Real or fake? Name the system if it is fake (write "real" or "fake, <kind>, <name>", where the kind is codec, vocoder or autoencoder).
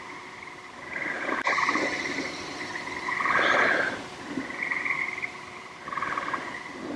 fake, vocoder, BigVGAN v2